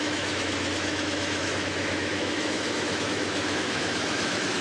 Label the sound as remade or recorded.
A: remade